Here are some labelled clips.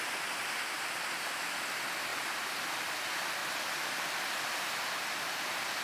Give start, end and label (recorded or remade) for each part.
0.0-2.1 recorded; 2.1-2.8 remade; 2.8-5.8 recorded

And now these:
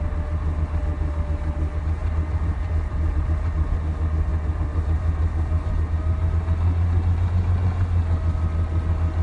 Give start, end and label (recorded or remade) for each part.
0.0-2.0 recorded; 2.0-3.4 remade; 3.4-4.3 recorded; 4.3-5.7 remade; 5.7-9.2 recorded